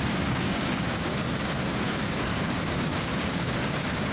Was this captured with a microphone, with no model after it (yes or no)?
no